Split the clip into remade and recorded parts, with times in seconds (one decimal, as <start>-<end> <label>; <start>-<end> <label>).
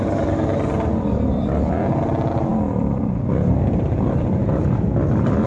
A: 0.0-5.5 recorded